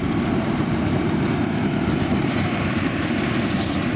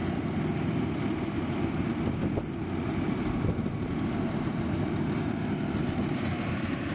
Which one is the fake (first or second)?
first